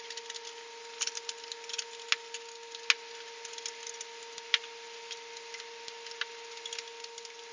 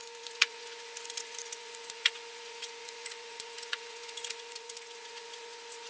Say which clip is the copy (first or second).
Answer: second